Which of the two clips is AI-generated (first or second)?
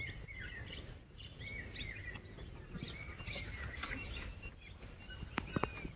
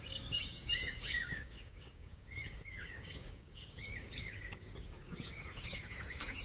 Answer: second